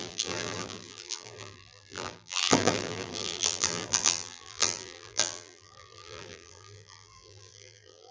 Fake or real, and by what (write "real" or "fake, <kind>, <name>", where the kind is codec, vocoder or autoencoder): fake, vocoder, BigVGAN v2